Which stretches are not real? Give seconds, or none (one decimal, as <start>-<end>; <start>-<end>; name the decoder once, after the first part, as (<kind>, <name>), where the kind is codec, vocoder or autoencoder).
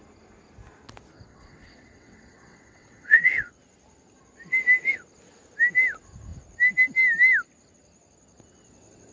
1.3-3.5 (vocoder, WaveNeXt)